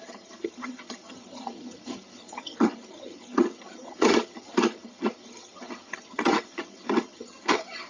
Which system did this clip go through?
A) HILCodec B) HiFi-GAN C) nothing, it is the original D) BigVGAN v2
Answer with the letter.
B